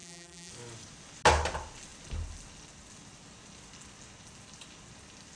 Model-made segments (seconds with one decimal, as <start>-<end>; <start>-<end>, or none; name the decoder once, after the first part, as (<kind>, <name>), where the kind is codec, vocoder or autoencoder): 0.0-0.5 (vocoder, BigVGAN v2)